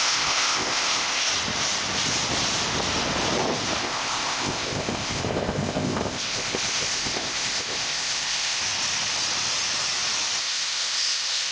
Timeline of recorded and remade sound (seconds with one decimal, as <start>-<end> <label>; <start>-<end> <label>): 0.0-1.3 remade; 1.3-3.8 recorded; 3.8-8.6 remade; 8.6-10.4 recorded; 10.4-11.5 remade